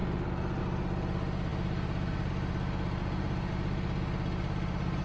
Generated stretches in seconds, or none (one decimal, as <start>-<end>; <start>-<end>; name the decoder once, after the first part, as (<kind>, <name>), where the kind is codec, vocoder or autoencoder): 3.0-3.5 (vocoder, Vocos)